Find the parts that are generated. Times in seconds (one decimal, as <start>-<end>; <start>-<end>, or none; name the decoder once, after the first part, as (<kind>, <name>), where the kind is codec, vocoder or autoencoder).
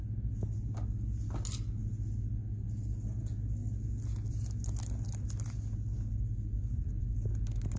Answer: 6.6-7.1 (vocoder, Vocos)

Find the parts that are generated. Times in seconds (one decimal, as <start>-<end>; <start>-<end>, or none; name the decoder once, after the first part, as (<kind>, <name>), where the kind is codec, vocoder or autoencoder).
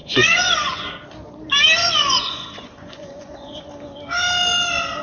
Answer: 0.0-0.9 (vocoder, Vocos); 1.8-3.7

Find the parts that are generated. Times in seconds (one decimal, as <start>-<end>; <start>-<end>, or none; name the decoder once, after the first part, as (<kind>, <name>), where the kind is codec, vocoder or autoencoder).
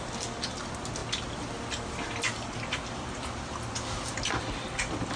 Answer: none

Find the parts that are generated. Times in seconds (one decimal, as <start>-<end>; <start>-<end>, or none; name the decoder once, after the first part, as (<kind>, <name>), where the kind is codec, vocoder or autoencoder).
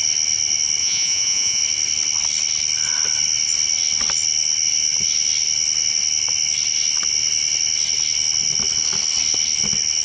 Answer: 0.8-1.6 (vocoder, Vocos)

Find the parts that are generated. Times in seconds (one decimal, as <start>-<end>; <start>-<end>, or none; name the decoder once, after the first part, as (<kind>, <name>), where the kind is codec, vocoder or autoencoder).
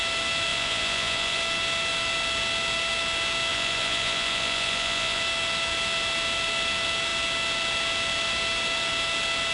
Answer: 0.5-1.4 (vocoder, Vocos); 3.5-5.2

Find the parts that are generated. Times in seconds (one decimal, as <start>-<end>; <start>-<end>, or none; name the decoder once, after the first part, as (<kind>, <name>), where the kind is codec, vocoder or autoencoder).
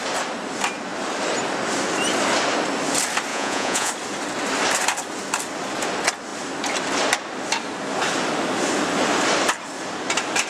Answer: 3.3-3.9 (vocoder, Vocos)